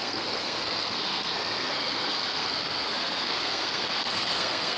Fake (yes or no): yes